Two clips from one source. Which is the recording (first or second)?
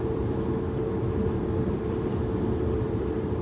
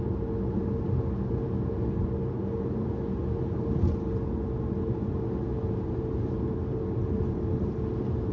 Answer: second